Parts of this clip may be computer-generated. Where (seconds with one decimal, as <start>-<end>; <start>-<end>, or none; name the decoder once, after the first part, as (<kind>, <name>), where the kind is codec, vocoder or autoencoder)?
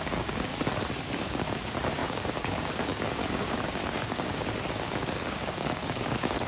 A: 0.0-0.5 (codec, DAC); 1.0-6.5